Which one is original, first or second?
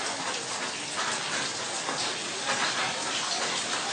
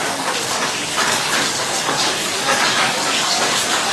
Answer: first